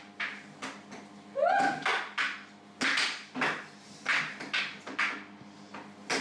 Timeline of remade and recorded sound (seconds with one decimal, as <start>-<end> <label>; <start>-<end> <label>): 0.0-6.2 recorded